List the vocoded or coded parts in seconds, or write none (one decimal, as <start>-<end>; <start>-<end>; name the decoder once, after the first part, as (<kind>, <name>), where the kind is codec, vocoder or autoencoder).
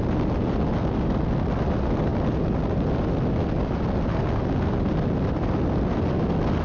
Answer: none